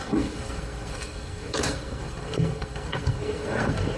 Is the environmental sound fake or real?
fake